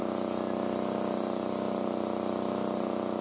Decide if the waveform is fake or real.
real